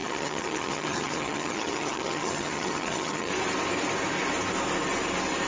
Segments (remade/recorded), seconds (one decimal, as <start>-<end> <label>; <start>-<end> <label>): 0.0-3.3 remade; 3.3-5.5 recorded